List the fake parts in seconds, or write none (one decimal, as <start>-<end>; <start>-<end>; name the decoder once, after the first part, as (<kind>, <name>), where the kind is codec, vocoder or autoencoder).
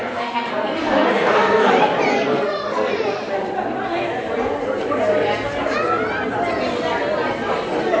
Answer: 0.0-1.7 (codec, SNAC); 2.1-2.9